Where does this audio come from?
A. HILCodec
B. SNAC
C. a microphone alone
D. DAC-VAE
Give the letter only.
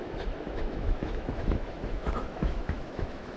D